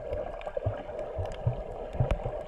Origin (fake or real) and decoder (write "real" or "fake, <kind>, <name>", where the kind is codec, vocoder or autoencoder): real